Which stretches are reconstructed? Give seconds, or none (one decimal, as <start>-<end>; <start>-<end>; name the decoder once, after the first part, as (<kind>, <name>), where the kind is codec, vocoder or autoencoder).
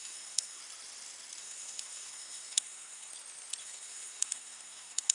0.0-0.6 (codec, SNAC); 1.4-3.1; 3.6-5.1